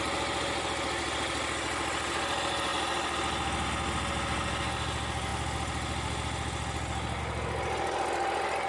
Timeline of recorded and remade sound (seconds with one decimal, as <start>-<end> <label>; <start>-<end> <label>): 0.0-8.7 recorded